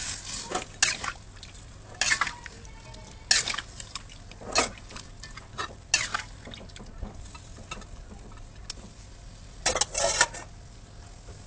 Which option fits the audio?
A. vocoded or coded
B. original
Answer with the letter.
B